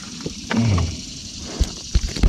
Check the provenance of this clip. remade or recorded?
remade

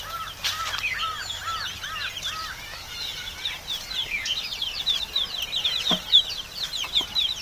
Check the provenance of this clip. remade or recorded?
recorded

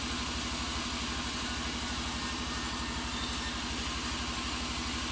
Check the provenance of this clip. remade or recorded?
recorded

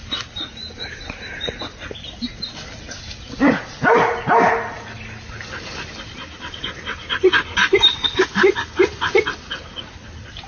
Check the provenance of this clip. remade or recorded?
recorded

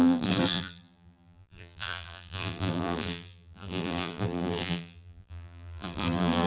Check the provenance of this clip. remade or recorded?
remade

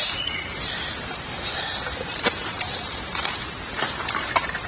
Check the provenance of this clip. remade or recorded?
remade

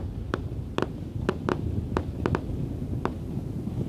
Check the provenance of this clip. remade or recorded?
recorded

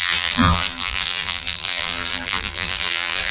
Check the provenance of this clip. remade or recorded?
remade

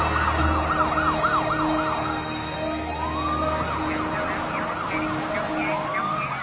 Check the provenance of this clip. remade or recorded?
recorded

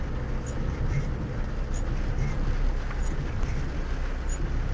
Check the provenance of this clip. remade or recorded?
recorded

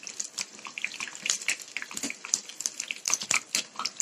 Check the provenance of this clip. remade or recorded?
remade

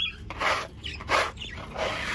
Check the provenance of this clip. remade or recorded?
remade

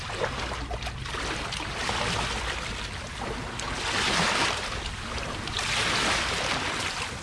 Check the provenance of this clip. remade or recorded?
recorded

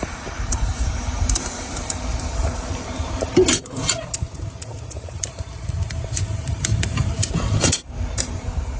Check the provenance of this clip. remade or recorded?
remade